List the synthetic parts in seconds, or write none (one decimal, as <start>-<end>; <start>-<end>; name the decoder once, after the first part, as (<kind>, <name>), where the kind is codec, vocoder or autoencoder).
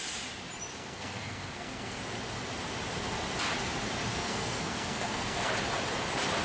0.7-2.0 (codec, SNAC); 4.1-5.5